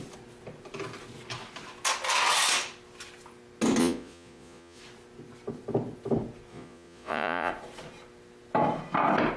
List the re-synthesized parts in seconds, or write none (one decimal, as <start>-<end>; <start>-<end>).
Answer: 3.8-4.8; 6.5-7.5